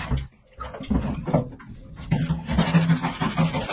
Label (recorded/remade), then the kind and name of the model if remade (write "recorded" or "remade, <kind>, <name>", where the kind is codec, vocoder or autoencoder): recorded